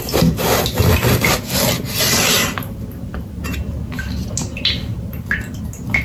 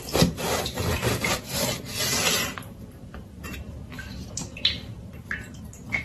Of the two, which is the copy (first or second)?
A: second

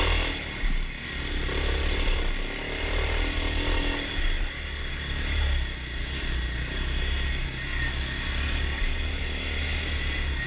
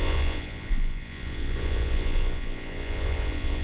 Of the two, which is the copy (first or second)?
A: second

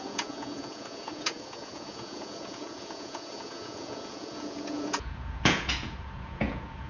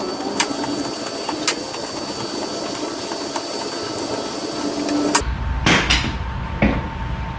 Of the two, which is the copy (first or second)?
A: first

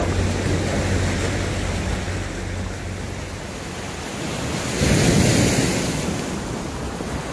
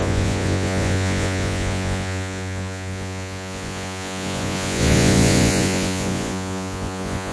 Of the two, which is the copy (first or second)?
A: second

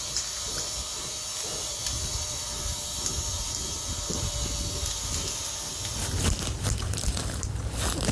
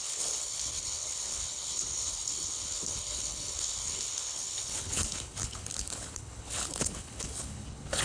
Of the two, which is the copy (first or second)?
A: second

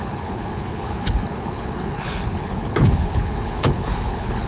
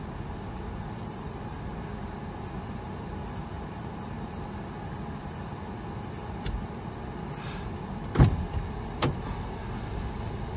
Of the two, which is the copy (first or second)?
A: first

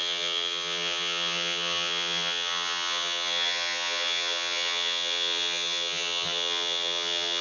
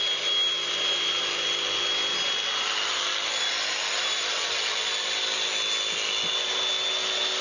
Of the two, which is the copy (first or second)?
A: first